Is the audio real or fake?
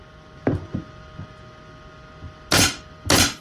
real